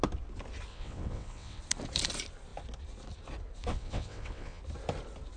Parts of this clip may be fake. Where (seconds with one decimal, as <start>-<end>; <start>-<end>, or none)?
0.7-1.6; 3.7-4.6